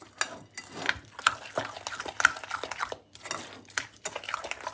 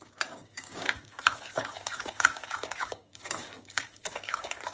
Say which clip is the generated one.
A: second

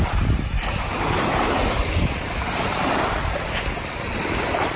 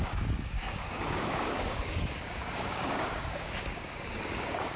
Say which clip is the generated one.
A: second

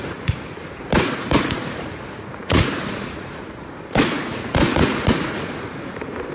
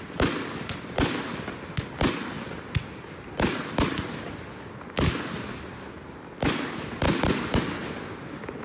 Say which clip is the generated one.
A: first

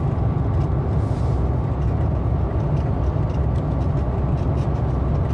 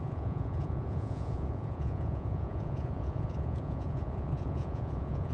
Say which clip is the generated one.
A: second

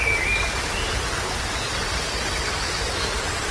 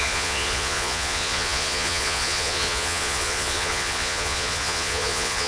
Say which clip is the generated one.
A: second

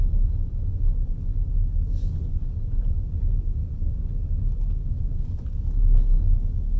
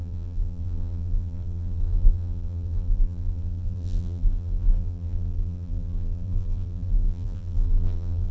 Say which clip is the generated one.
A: second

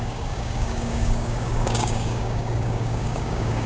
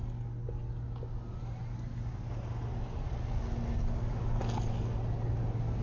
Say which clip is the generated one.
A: first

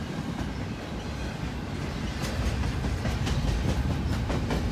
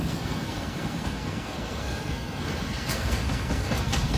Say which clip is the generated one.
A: second